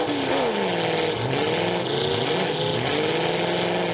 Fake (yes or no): no